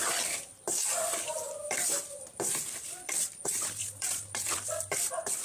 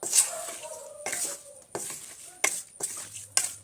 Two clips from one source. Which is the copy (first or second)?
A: first